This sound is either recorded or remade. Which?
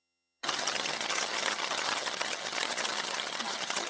remade